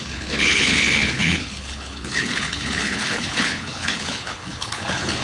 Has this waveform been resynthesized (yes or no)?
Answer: yes